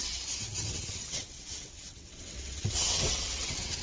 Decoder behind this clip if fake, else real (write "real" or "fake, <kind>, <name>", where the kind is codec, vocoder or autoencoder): fake, vocoder, WaveNeXt